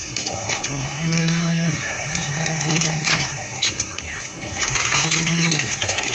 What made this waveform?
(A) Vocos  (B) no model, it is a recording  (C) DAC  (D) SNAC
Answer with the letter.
D